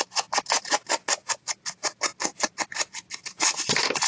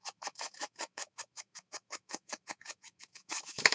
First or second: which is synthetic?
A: second